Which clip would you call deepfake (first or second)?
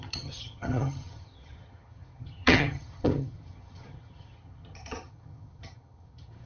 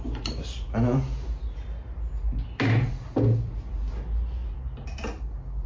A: first